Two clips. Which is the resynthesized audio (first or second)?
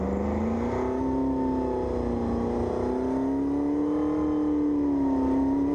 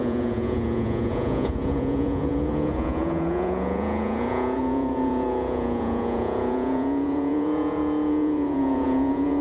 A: second